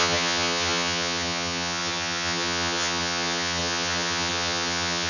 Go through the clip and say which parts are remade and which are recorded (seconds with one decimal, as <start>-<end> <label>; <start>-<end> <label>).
0.0-5.1 remade